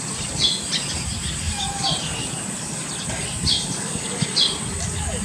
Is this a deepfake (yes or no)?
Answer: no